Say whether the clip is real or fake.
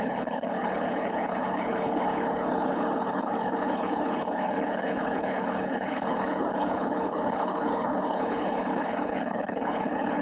fake